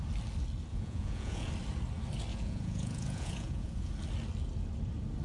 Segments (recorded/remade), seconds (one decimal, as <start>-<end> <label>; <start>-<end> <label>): 0.0-0.7 recorded; 0.7-1.5 remade; 1.5-2.3 recorded; 2.3-3.9 remade; 3.9-5.2 recorded